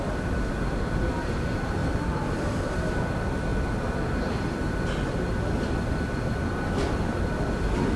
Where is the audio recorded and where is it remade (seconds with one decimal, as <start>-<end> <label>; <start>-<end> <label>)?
0.0-1.8 recorded; 1.8-2.7 remade; 2.7-8.0 recorded